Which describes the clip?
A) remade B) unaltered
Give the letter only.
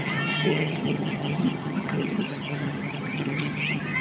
A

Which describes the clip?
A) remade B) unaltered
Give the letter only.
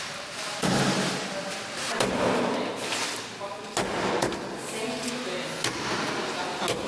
B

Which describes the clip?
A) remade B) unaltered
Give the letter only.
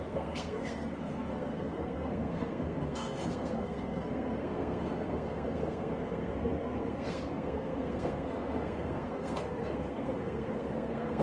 A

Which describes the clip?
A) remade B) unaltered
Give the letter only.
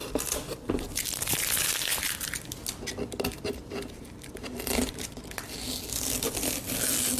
B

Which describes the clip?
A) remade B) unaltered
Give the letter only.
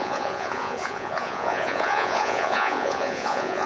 A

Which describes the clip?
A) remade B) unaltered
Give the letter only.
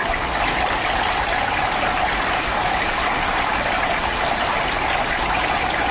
B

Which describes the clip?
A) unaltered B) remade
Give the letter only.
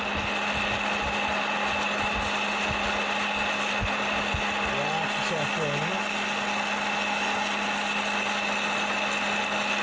A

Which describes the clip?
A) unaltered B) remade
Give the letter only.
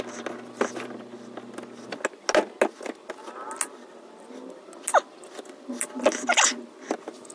A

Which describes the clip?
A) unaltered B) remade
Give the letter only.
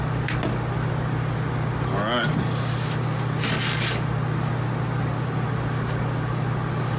A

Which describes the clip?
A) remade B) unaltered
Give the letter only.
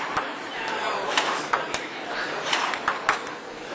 A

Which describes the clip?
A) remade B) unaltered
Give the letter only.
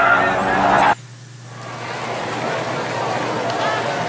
B